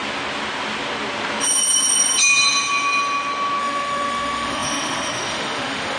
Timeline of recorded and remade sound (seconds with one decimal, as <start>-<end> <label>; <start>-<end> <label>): 0.0-3.6 recorded; 3.6-6.0 remade